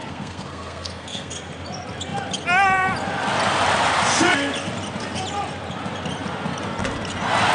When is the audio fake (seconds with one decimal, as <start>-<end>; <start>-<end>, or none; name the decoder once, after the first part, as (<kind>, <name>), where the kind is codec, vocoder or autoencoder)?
0.0-1.3 (codec, SNAC)

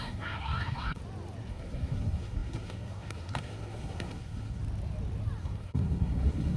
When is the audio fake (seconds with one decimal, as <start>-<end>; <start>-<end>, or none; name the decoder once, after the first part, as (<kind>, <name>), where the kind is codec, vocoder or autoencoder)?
0.0-1.0 (codec, SNAC); 1.5-4.6; 5.4-6.6

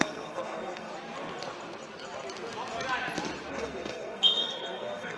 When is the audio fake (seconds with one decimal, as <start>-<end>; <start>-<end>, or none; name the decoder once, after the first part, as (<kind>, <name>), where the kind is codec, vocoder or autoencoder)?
0.0-0.9 (codec, SNAC); 3.5-5.2

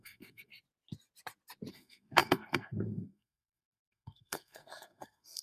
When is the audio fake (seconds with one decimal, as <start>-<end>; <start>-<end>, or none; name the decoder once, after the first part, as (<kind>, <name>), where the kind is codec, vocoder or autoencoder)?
0.0-0.5 (codec, SNAC); 1.7-5.4

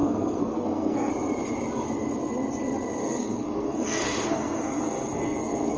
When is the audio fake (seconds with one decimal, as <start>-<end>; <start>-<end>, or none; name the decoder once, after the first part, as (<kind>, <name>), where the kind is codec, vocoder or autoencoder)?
0.0-1.1 (codec, SNAC); 3.0-5.8

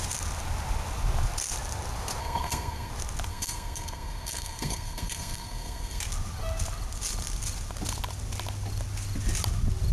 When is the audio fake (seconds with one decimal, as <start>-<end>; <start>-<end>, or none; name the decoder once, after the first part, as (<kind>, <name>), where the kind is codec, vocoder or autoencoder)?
2.2-2.9 (codec, SNAC); 3.3-6.0

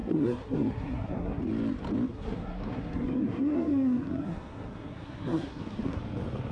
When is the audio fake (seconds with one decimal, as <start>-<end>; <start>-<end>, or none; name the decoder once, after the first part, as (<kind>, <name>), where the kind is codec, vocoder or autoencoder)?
0.0-1.4 (codec, SNAC); 2.1-6.0

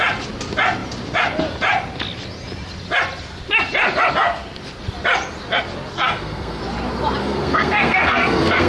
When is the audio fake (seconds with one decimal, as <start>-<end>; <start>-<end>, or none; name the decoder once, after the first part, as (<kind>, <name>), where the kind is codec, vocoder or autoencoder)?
5.9-6.6 (codec, SNAC); 7.2-8.7